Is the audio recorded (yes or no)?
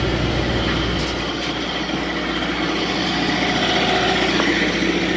yes